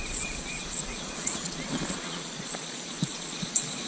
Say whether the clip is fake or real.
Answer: fake